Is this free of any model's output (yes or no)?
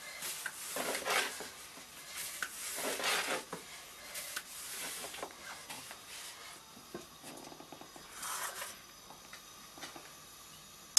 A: yes